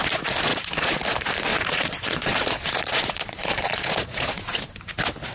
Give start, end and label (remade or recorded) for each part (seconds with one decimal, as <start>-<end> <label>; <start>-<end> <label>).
0.0-0.5 recorded; 0.5-1.0 remade; 1.0-1.5 recorded; 1.5-4.6 remade; 4.6-5.3 recorded